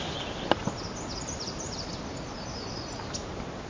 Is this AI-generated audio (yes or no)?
no